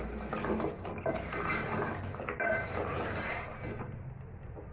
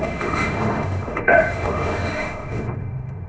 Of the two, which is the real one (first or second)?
first